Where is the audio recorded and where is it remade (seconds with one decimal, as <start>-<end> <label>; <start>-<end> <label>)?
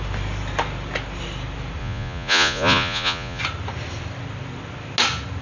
0.0-1.8 recorded; 1.8-3.4 remade; 3.4-5.4 recorded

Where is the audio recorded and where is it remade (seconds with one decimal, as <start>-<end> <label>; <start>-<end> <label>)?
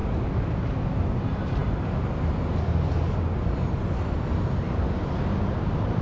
0.0-6.0 recorded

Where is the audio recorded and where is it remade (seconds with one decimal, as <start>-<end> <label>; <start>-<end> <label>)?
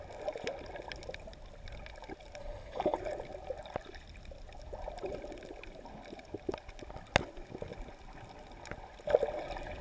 0.0-2.4 recorded; 2.4-3.0 remade; 3.0-9.8 recorded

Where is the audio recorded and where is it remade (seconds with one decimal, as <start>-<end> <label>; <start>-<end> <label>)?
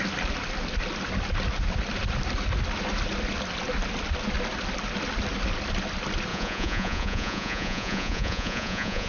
0.0-6.3 recorded; 6.3-9.1 remade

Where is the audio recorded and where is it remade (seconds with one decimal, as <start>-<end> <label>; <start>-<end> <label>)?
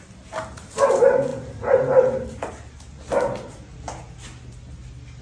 0.0-5.2 recorded